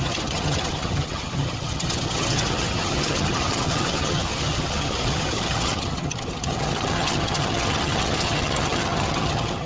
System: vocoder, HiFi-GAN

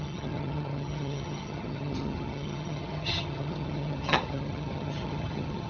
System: vocoder, HiFi-GAN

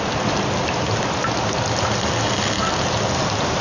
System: none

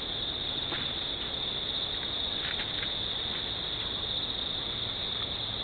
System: none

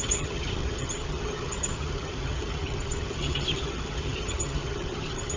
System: vocoder, HiFi-GAN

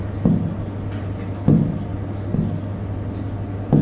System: none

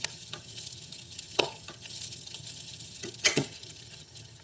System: vocoder, HiFi-GAN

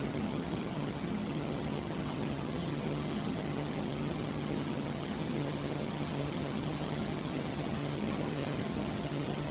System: vocoder, HiFi-GAN